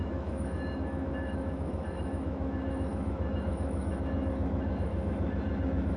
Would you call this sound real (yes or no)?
no